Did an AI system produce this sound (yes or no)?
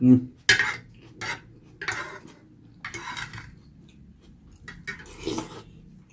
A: no